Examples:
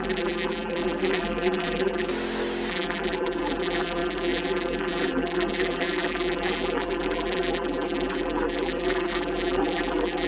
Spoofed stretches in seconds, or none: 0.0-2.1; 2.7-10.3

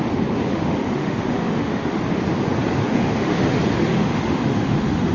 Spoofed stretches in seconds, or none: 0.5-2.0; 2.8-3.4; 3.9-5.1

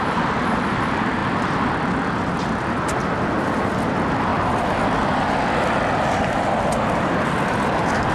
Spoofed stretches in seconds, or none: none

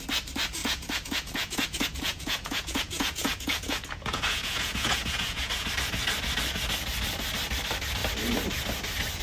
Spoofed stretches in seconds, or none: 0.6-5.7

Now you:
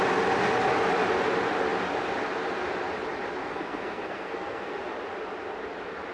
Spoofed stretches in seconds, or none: 3.4-4.8